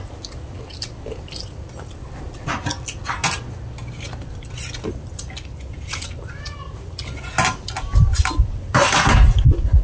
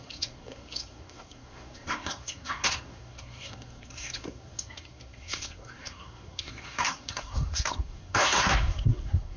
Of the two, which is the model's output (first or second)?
second